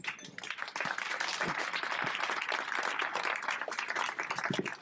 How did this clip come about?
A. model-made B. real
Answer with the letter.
B